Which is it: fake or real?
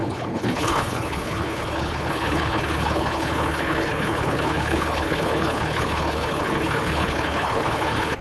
fake